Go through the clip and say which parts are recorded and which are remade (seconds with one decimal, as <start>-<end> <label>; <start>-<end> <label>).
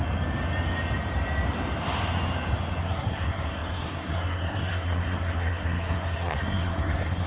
0.0-2.8 recorded; 2.8-7.3 remade